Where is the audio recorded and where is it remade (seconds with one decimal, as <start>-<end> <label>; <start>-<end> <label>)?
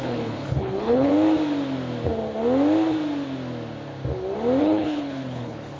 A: 0.0-1.1 remade; 1.1-4.6 recorded; 4.6-5.8 remade